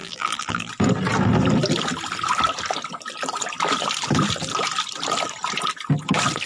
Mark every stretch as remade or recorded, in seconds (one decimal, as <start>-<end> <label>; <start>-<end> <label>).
0.0-0.7 remade; 0.7-6.5 recorded